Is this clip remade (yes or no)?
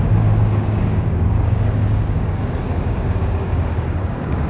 yes